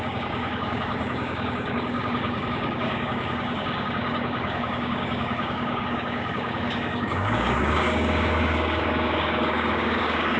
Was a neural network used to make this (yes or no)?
yes